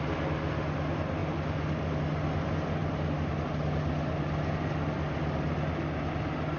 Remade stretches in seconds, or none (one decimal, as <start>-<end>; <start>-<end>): none